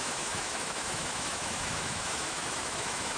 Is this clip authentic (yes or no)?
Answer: no